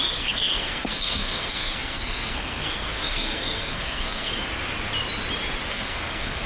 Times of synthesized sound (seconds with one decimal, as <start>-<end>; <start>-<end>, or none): 0.0-4.3; 5.7-6.5